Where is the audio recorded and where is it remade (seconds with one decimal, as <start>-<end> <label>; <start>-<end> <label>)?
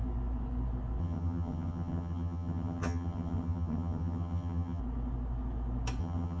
0.0-1.0 recorded; 1.0-4.8 remade; 4.8-6.0 recorded; 6.0-6.4 remade